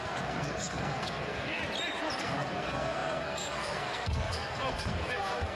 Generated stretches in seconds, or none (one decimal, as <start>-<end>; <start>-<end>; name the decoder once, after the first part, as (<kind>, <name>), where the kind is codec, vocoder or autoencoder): 0.0-1.6 (codec, SNAC); 2.2-5.6